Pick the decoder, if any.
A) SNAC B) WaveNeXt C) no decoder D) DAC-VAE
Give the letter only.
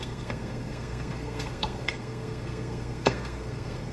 A